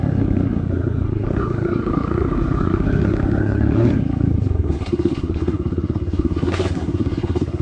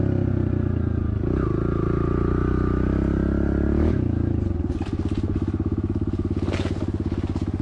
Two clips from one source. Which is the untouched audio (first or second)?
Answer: second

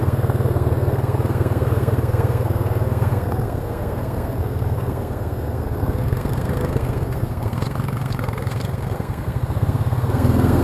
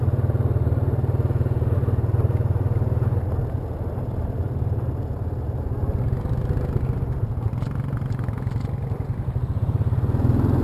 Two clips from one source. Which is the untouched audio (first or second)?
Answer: second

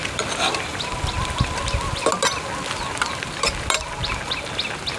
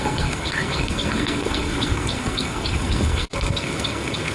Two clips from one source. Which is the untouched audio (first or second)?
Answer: first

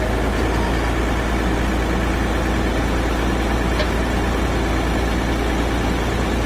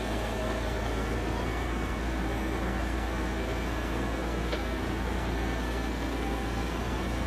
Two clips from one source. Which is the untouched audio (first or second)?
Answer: first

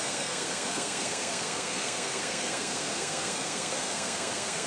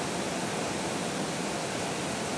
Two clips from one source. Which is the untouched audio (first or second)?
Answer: second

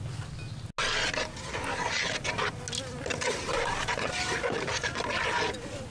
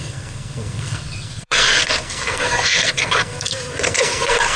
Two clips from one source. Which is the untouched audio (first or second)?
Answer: first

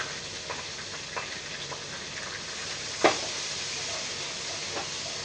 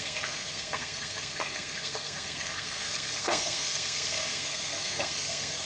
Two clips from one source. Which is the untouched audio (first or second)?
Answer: first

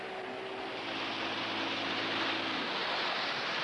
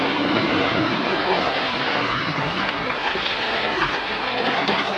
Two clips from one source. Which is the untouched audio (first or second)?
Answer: first